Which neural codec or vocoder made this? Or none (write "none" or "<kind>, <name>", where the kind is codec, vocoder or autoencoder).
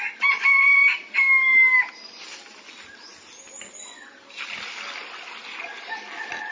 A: none